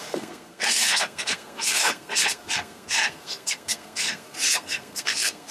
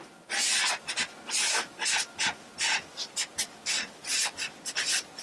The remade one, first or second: first